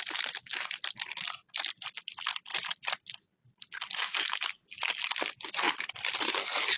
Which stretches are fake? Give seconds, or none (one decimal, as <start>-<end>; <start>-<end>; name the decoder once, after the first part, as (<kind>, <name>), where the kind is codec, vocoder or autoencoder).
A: none

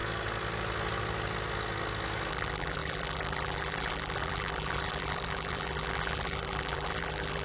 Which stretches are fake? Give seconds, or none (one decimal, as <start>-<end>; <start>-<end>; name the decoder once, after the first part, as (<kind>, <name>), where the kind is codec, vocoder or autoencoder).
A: 2.3-7.4 (vocoder, BigVGAN v2)

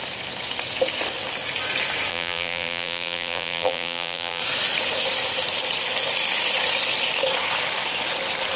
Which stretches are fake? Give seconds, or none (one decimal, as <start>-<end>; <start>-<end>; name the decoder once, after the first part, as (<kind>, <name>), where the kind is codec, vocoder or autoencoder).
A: 2.1-4.4 (vocoder, BigVGAN v2)